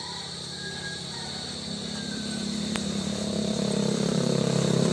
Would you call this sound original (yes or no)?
no